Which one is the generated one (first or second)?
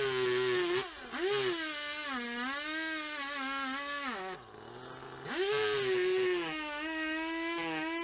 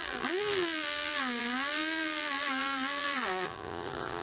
second